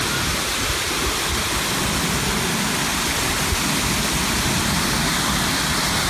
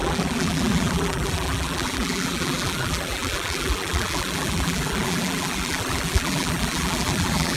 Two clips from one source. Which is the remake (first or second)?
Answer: second